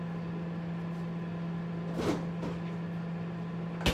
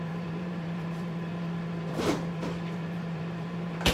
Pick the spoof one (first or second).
second